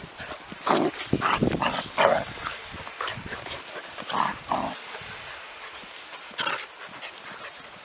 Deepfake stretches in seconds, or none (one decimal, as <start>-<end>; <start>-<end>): none